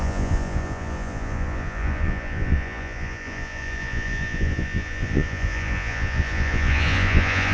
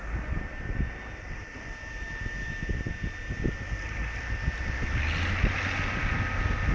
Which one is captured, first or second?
second